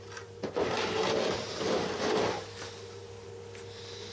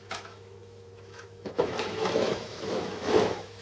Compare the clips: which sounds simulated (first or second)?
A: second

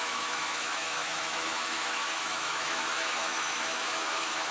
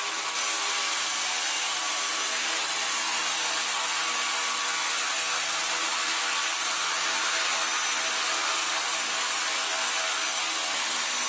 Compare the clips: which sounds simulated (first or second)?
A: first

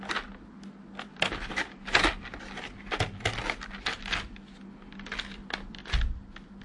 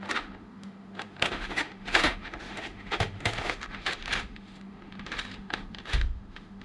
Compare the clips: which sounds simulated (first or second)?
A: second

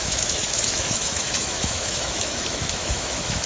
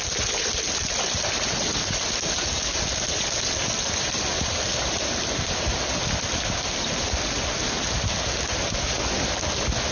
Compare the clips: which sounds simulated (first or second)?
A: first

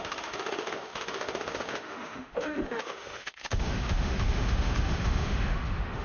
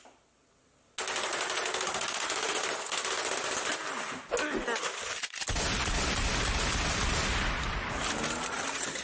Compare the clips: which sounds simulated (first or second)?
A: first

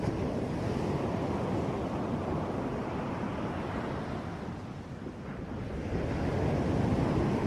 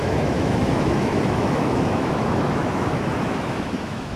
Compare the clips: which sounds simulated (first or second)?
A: second